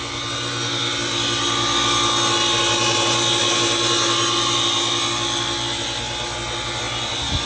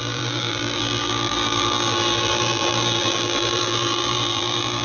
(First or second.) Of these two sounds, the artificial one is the second